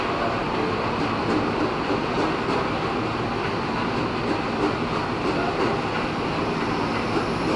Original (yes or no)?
yes